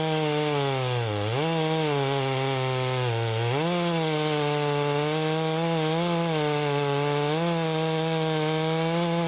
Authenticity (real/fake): real